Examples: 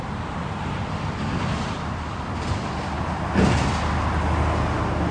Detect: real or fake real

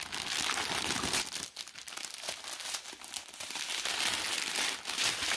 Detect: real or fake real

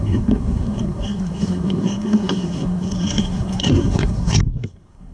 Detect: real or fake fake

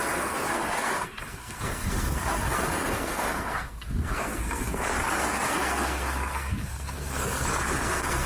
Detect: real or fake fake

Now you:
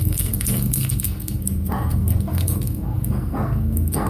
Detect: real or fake fake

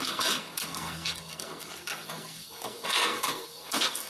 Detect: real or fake fake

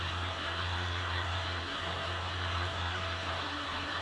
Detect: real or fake fake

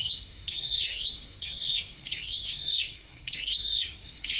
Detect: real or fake fake